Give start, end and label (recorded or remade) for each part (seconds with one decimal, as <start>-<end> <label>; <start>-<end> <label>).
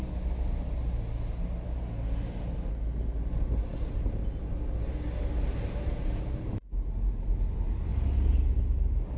0.0-9.2 recorded